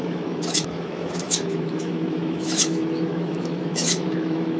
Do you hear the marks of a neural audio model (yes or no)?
yes